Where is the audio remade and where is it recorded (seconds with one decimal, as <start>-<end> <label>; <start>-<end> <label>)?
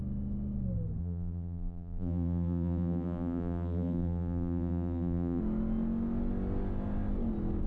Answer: 0.0-1.0 recorded; 1.0-5.4 remade; 5.4-7.7 recorded